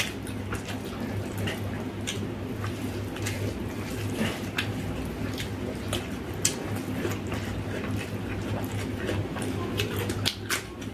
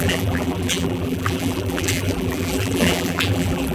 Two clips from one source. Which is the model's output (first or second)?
second